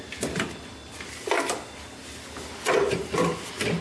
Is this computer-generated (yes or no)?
no